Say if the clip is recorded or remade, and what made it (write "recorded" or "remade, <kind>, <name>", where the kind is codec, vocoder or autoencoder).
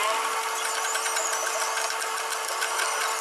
recorded